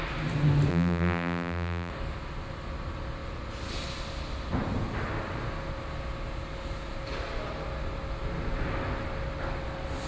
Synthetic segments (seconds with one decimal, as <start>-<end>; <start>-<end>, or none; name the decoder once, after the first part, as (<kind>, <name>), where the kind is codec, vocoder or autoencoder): 0.7-1.9 (vocoder, BigVGAN v2)